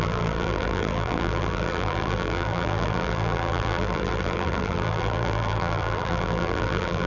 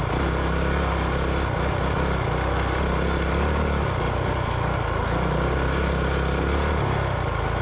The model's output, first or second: first